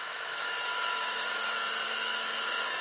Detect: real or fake fake